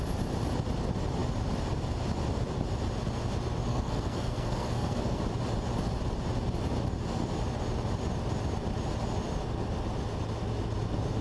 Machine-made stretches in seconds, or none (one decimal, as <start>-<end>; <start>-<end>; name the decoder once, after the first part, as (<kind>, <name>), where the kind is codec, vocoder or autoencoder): 3.7-5.2 (codec, SNAC)